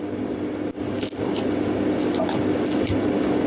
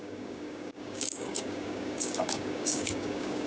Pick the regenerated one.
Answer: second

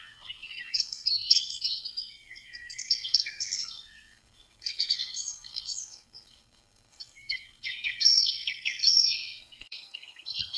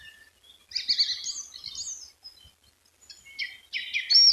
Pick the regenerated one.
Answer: first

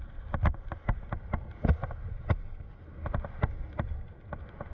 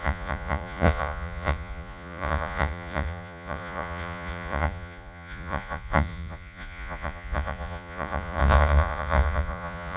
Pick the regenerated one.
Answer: second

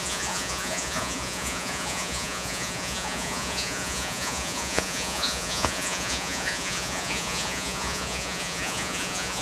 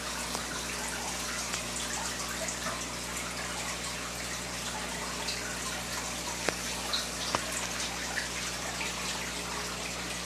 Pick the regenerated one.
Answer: first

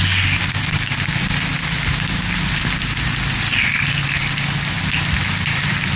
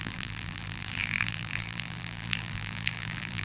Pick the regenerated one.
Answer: second